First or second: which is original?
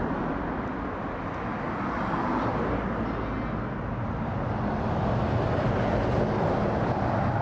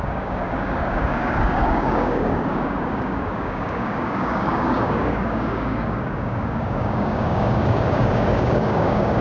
first